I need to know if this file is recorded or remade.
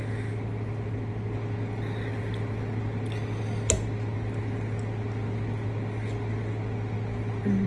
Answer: recorded